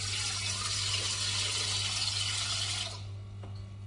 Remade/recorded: recorded